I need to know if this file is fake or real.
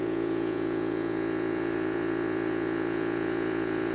fake